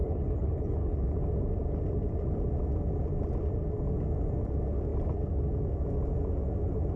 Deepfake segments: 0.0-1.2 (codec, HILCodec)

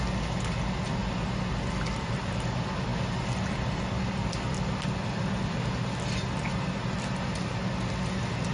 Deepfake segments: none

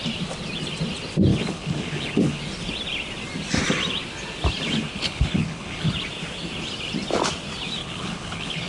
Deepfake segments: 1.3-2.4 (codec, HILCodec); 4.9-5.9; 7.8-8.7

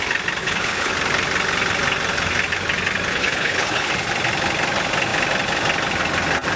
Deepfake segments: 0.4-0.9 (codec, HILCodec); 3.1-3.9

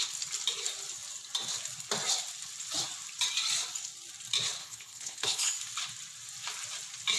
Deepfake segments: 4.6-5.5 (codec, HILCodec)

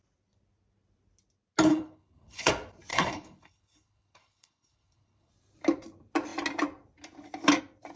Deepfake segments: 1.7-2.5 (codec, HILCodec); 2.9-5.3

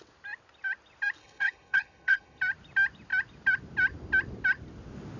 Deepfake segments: 1.2-2.4 (codec, HILCodec)